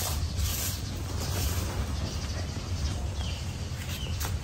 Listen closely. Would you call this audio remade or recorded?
recorded